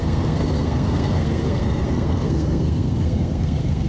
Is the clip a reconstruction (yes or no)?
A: yes